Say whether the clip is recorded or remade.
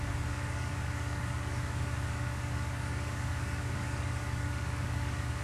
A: remade